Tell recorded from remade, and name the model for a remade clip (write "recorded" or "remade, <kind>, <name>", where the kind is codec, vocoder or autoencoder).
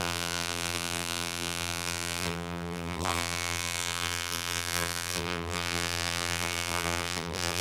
remade, vocoder, BigVGAN v2